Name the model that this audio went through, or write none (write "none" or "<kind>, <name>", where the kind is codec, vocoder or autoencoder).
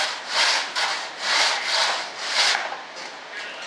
none